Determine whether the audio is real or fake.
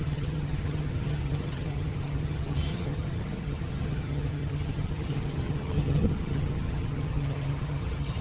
fake